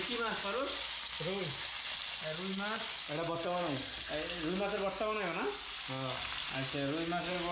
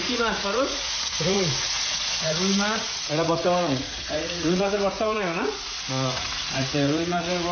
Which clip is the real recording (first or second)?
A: first